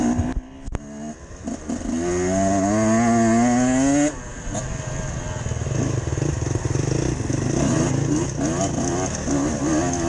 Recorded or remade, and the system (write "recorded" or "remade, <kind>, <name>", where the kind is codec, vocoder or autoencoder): recorded